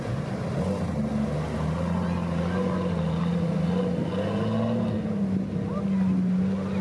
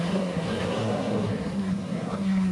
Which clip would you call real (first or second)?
first